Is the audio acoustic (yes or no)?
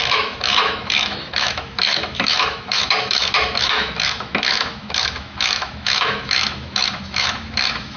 no